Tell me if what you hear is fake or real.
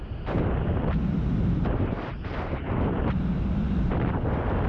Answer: fake